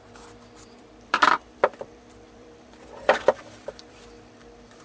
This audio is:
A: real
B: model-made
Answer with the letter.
B